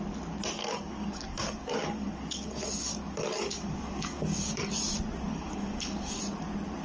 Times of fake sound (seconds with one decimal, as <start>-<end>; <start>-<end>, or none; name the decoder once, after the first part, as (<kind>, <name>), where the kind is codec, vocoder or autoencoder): 0.6-4.7 (codec, DAC); 5.3-6.2